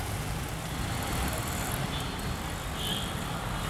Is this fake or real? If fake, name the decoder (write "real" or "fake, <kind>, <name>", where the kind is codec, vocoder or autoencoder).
real